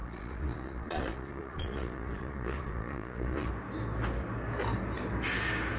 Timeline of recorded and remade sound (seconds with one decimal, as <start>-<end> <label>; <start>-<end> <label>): 0.0-3.5 remade; 3.5-5.8 recorded